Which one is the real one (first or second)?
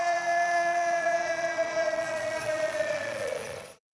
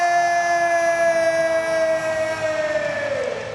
second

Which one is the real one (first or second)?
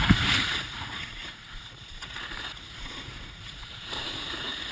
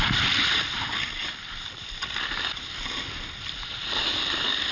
second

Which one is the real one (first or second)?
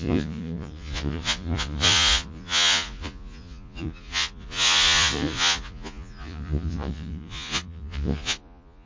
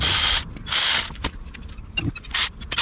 second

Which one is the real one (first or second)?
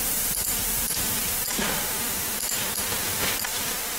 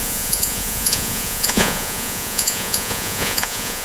first